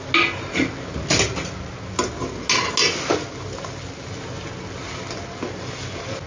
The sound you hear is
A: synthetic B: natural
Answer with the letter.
B